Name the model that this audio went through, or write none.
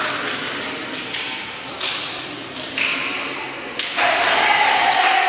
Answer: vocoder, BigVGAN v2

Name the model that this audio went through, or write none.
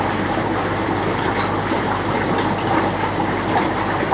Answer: none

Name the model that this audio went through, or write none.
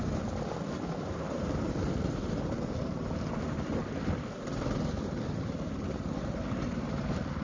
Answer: vocoder, BigVGAN v2